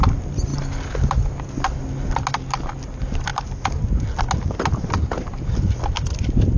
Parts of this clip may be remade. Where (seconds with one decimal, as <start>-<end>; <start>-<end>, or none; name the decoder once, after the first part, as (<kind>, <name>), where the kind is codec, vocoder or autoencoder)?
none